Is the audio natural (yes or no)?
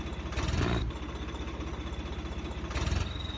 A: yes